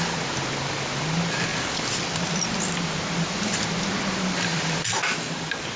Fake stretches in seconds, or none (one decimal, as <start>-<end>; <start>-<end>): 1.5-2.6; 4.5-5.1